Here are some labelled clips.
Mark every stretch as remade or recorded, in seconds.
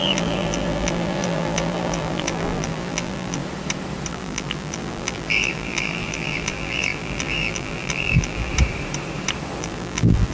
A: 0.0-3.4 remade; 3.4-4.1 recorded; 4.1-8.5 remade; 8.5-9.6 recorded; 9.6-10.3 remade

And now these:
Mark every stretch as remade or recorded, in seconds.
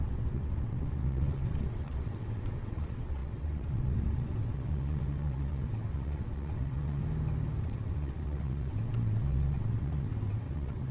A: 0.0-7.0 remade; 7.0-7.6 recorded; 7.6-10.9 remade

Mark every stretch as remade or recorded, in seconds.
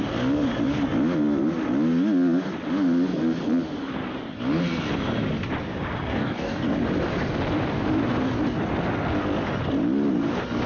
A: 0.0-6.1 recorded; 6.1-6.7 remade; 6.7-10.7 recorded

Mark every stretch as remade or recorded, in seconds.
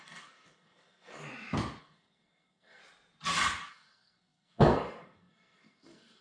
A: 0.0-1.2 remade; 1.2-1.8 recorded; 1.8-2.8 remade; 2.8-3.7 recorded; 3.7-6.2 remade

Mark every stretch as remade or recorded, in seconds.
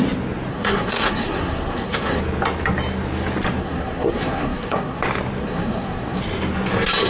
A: 0.0-0.5 recorded; 0.5-2.2 remade; 2.2-3.6 recorded; 3.6-5.0 remade; 5.0-5.4 recorded; 5.4-6.2 remade; 6.2-7.1 recorded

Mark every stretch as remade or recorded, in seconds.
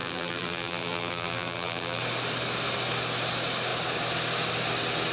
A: 0.0-2.0 remade; 2.0-5.1 recorded